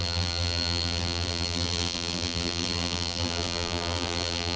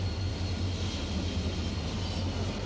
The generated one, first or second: first